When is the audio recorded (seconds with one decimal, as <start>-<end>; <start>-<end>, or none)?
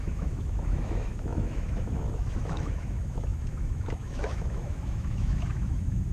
none